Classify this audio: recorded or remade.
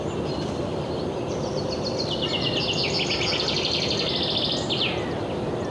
recorded